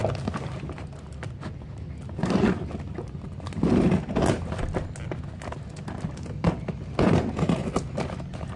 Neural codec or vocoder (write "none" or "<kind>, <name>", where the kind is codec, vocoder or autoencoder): none